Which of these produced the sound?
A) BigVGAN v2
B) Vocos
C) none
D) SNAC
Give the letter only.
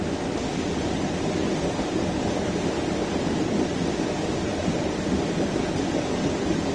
C